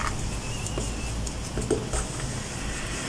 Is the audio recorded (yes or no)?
yes